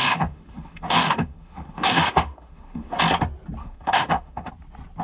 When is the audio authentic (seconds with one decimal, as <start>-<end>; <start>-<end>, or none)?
3.0-3.6; 4.5-5.0